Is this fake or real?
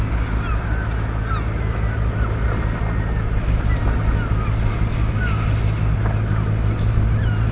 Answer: real